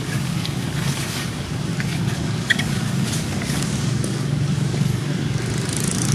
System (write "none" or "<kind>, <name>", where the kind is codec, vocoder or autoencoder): codec, DAC